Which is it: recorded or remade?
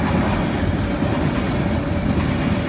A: recorded